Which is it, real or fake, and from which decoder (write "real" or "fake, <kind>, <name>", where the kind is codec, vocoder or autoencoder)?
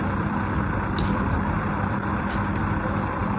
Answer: real